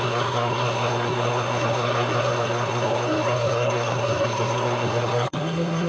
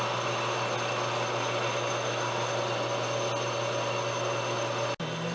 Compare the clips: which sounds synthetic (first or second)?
first